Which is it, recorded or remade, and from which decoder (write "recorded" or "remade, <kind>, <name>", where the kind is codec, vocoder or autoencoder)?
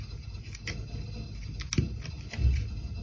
recorded